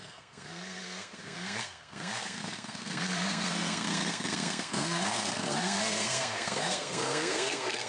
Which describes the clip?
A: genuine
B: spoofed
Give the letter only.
B